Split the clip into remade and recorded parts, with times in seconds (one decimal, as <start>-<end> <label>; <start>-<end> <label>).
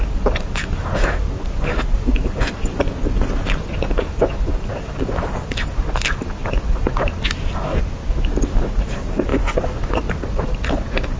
0.0-11.2 recorded